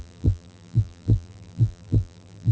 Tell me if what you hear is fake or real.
fake